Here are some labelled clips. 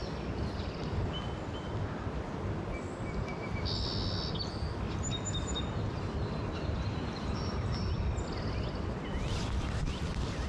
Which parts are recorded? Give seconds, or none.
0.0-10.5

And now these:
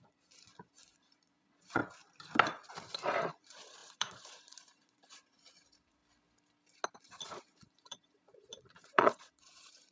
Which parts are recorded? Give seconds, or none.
1.8-3.3; 6.0-7.0